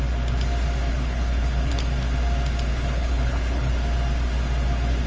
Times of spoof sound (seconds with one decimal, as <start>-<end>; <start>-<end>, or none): 0.9-1.7; 2.7-3.7